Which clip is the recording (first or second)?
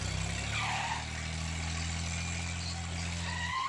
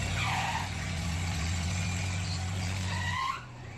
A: first